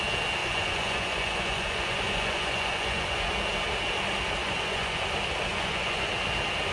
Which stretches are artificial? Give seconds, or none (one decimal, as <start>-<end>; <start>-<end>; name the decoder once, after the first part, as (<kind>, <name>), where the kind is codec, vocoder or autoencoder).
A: 0.4-3.3 (vocoder, Vocos); 4.4-5.0; 5.5-6.1